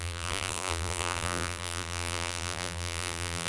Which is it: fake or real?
fake